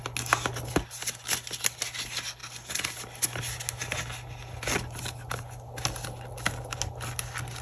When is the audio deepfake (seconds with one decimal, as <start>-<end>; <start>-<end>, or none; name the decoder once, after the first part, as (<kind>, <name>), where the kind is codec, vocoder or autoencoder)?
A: none